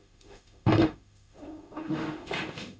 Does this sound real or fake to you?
fake